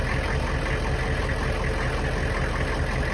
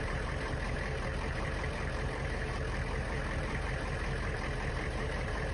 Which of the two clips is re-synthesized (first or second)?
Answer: second